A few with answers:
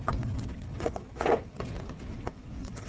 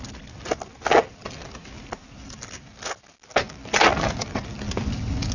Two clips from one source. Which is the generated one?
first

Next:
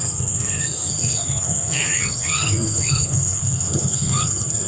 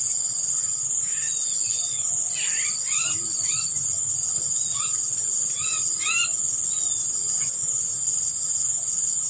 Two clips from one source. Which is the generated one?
first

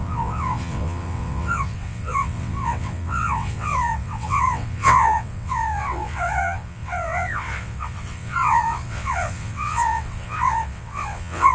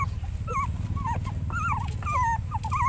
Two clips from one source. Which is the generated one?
first